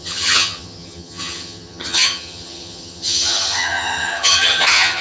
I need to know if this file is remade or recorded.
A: remade